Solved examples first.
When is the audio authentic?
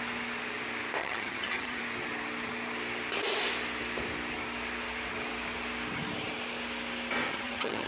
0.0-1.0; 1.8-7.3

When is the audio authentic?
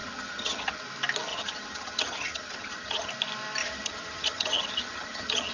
0.8-1.3; 3.1-3.6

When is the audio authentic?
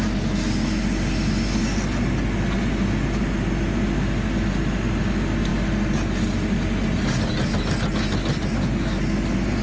0.0-9.6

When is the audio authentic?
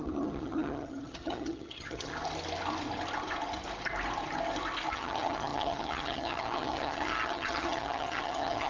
2.1-4.9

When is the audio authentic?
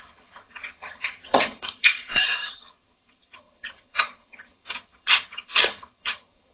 none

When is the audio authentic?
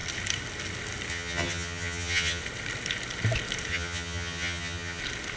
0.0-1.1; 2.4-3.7; 5.0-5.4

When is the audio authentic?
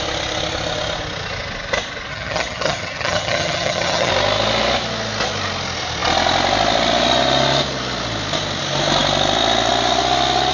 0.0-2.1; 4.1-10.5